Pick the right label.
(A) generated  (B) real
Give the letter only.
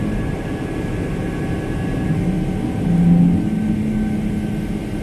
B